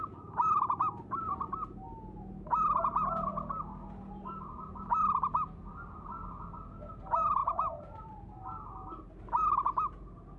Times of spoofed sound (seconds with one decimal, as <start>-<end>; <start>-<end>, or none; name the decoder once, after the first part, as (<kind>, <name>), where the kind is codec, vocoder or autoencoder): 7.4-8.3 (vocoder, BigVGAN v2)